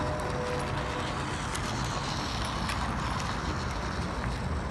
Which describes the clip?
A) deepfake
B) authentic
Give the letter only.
B